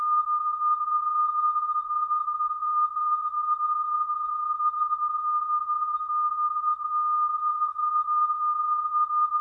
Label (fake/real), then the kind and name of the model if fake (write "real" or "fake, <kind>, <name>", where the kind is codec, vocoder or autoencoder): fake, codec, SNAC